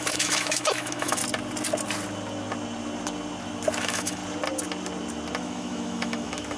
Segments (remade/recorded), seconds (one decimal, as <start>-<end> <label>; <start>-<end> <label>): 0.0-1.2 remade; 1.2-3.8 recorded; 3.8-4.2 remade; 4.2-5.4 recorded; 5.4-6.6 remade